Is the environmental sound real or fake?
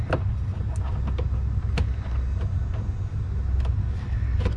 real